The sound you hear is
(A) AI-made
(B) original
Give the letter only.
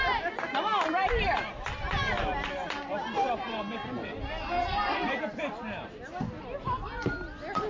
B